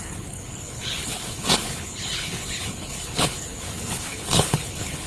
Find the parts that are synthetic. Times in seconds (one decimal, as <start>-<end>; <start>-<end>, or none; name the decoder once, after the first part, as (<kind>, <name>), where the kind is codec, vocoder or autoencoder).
0.0-5.1 (codec, HILCodec)